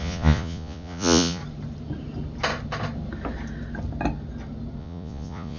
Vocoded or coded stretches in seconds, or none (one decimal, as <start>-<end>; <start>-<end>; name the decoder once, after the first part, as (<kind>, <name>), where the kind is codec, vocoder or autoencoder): 0.0-1.4 (vocoder, Vocos); 4.8-5.6